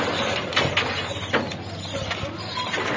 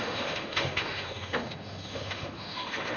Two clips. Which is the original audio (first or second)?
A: first